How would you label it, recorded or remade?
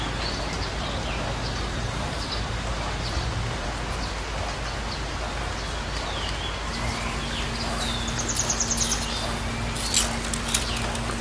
recorded